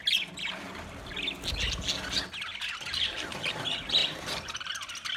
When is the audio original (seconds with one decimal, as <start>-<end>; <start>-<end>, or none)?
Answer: 0.0-2.5; 3.6-4.0; 4.7-5.2